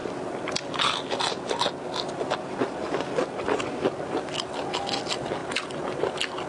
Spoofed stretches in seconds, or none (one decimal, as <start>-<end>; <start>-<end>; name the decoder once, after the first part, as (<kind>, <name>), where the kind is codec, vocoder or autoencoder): none